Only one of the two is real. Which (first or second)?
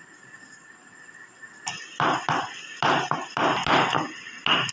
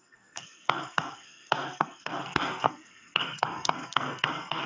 first